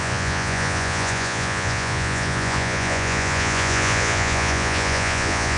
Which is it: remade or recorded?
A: remade